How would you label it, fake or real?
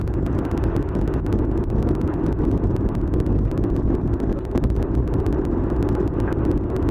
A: real